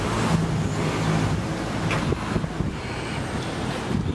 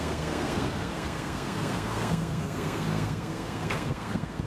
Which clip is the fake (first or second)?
second